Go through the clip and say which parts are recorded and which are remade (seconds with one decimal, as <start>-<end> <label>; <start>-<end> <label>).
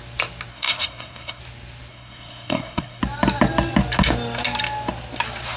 0.0-0.5 recorded; 0.5-1.4 remade; 1.4-1.9 recorded; 1.9-3.0 remade; 3.0-5.6 recorded